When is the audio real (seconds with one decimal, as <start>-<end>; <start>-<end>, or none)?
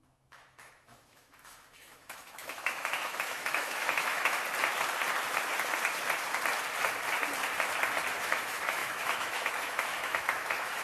4.4-8.2